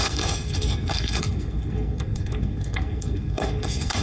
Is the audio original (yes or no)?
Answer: no